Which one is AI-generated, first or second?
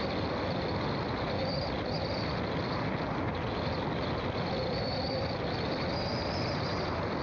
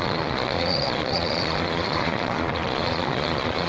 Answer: second